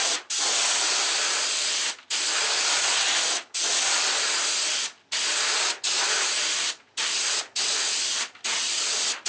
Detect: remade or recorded recorded